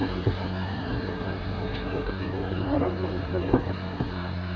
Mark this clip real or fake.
fake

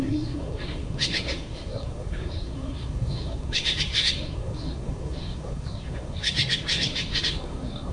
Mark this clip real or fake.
fake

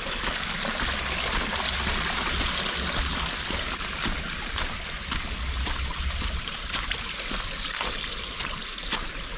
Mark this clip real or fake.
real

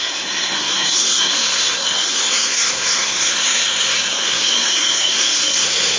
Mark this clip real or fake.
fake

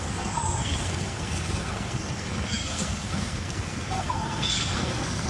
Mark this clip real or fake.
fake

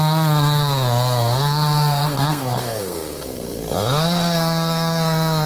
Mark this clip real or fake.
fake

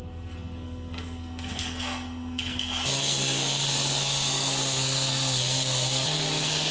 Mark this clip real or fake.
fake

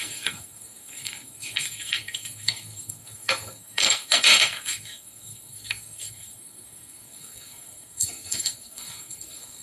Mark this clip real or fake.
fake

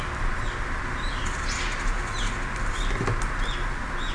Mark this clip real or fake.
real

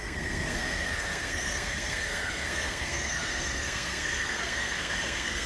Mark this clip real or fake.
fake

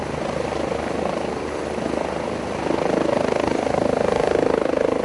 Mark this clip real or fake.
real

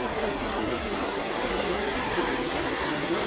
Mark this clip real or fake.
fake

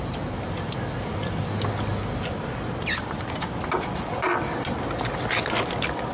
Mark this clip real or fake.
real